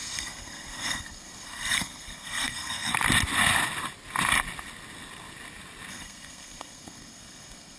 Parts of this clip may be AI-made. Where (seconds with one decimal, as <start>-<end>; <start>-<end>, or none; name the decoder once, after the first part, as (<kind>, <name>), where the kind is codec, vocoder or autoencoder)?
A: 0.0-2.9 (codec, SNAC); 5.9-7.8